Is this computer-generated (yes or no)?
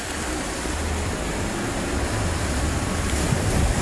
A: no